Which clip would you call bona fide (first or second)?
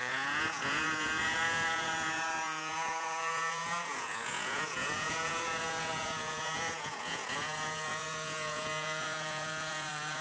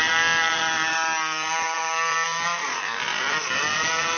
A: second